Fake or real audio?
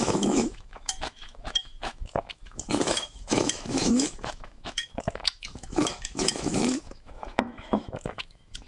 fake